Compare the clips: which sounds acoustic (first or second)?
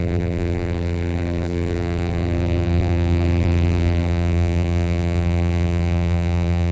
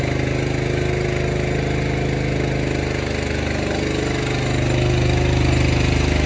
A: second